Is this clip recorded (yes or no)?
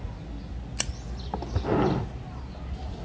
yes